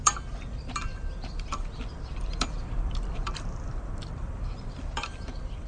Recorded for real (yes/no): no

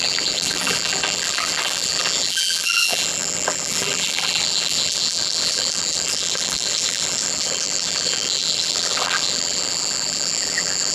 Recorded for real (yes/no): no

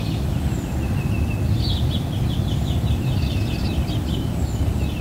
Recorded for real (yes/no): yes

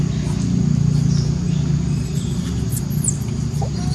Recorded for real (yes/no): yes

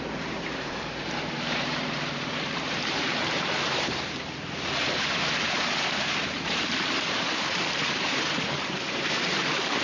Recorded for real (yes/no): no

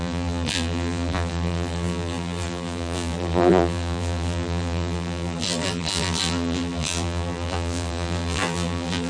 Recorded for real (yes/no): no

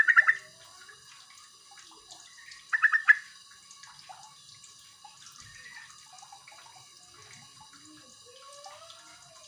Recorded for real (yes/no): yes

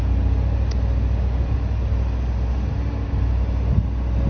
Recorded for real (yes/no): yes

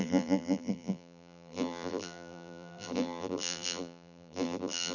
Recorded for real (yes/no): no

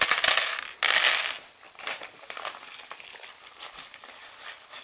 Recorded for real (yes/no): yes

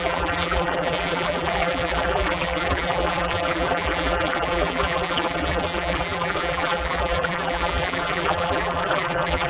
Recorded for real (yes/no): no